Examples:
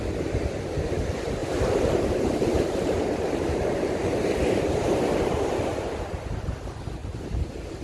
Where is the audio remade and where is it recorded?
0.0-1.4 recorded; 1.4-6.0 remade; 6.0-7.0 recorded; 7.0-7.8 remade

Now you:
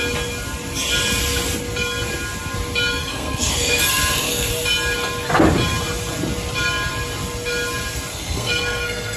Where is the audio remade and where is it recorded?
0.0-3.0 recorded; 3.0-4.5 remade; 4.5-8.1 recorded; 8.1-9.2 remade

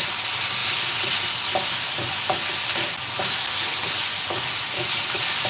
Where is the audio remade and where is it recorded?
0.0-5.5 recorded